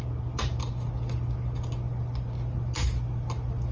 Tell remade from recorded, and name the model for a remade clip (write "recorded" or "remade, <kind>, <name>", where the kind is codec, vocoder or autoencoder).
recorded